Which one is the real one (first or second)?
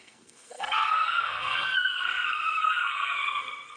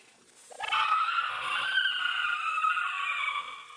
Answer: second